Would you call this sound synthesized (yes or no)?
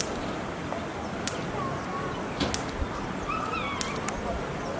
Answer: no